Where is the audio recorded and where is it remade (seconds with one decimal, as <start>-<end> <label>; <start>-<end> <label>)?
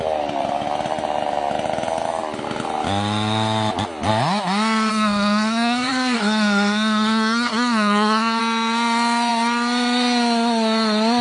0.0-4.9 recorded; 4.9-8.4 remade; 8.4-11.2 recorded